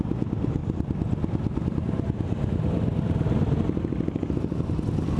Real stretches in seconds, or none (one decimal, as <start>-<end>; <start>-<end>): 0.0-0.6; 3.6-5.2